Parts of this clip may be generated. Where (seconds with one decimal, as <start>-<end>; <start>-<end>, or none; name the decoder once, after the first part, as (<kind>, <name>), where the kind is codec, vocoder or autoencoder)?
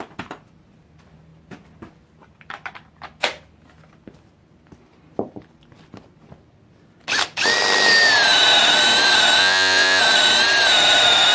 9.4-10.0 (vocoder, Vocos)